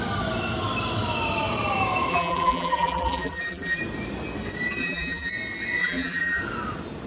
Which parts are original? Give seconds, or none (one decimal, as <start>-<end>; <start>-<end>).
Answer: 0.0-2.1; 3.8-4.8; 5.3-5.8; 6.4-7.1